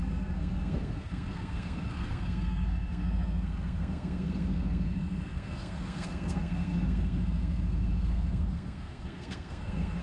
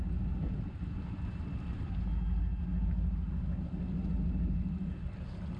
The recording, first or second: second